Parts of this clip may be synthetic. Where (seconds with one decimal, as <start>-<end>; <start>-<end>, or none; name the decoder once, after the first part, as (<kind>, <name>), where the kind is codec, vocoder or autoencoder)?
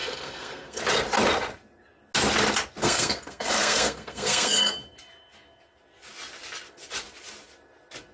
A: 0.0-0.8 (codec, SNAC); 2.8-4.7